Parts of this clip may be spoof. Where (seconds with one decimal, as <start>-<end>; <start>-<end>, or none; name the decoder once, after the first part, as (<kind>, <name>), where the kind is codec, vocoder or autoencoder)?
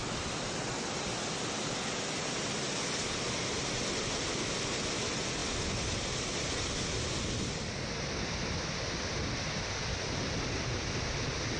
none